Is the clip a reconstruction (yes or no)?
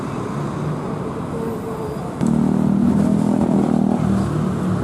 no